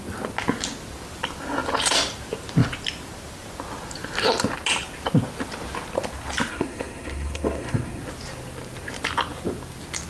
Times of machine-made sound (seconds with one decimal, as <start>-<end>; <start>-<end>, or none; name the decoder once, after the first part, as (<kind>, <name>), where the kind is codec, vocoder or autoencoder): 6.5-8.0 (codec, SNAC)